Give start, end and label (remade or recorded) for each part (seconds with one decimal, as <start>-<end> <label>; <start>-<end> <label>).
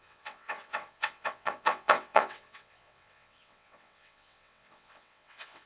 0.0-5.7 remade